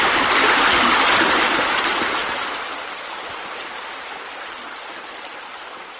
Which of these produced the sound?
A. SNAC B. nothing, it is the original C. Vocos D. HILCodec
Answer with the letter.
B